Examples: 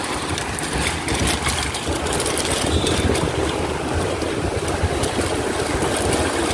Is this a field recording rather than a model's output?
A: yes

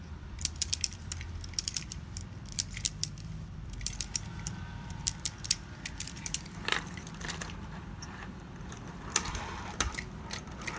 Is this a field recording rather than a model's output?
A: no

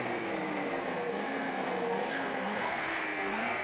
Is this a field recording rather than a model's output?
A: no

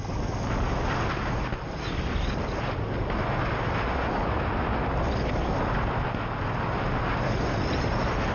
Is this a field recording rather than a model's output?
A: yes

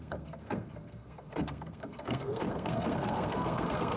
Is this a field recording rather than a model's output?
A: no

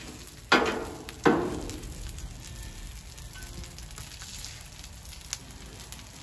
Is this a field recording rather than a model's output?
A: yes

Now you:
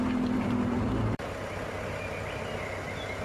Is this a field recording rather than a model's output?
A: no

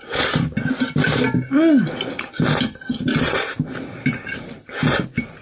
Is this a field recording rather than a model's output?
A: yes